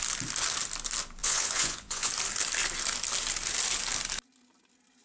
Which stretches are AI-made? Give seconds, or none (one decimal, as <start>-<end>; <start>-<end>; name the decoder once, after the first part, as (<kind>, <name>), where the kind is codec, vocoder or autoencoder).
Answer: 1.2-2.1 (vocoder, Vocos)